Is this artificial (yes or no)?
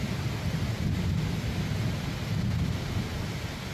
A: no